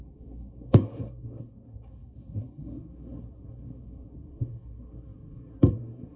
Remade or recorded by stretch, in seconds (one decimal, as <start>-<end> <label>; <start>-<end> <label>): 0.0-6.2 remade